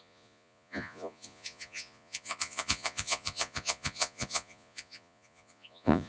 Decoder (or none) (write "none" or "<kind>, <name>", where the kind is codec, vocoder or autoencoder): vocoder, Vocos